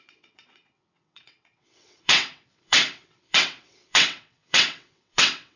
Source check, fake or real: fake